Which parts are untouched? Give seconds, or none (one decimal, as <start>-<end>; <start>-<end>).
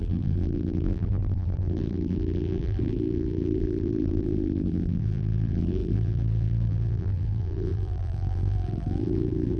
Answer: none